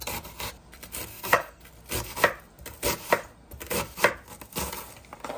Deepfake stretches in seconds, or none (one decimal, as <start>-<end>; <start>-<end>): 1.1-1.6